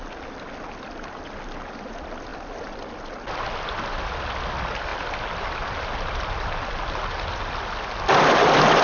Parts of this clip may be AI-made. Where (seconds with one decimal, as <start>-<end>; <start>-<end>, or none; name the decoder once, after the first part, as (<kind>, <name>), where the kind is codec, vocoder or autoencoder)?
none